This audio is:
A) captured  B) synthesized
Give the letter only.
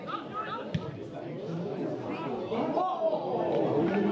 A